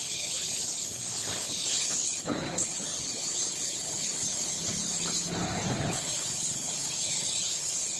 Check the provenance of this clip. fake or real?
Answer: fake